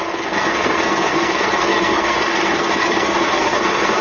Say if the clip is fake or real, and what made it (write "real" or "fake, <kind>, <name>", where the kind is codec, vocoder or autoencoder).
fake, codec, SNAC